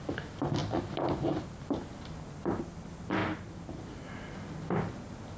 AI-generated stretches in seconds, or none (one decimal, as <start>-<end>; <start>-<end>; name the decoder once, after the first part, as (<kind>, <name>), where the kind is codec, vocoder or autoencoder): 3.2-3.8 (vocoder, BigVGAN v2)